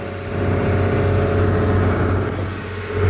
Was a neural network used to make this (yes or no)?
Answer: no